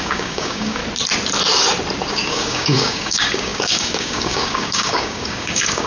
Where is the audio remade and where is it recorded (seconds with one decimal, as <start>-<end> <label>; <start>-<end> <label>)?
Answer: 0.0-0.8 remade; 0.8-2.1 recorded; 2.1-5.9 remade